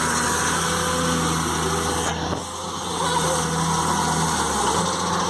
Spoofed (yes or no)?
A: no